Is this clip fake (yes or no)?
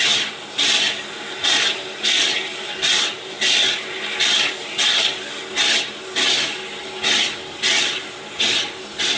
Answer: no